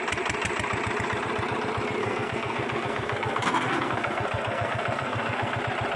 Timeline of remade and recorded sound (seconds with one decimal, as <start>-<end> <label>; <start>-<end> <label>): 0.0-2.0 recorded; 2.0-5.6 remade; 5.6-6.0 recorded